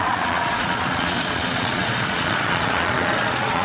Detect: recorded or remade remade